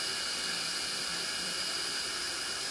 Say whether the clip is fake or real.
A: fake